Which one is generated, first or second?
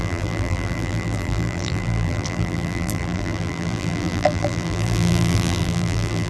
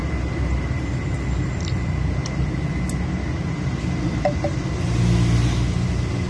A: first